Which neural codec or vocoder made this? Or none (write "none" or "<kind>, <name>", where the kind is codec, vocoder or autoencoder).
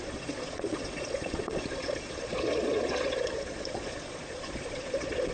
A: vocoder, Vocos